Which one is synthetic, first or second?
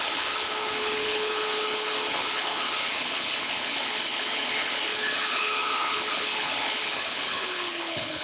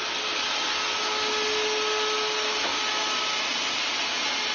first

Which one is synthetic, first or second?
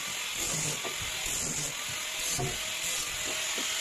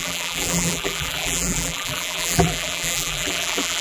second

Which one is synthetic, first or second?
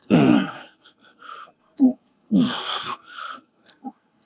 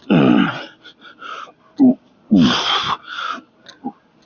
first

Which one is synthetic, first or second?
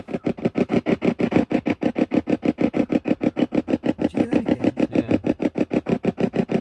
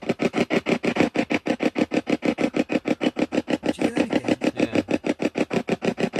first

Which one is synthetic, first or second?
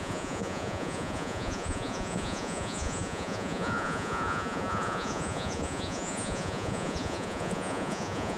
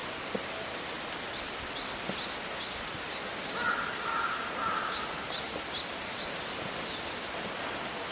first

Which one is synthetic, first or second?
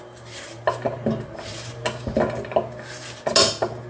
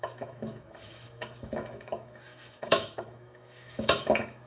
second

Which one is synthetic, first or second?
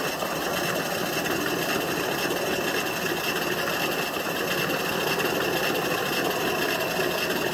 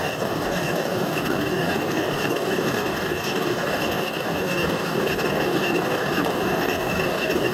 second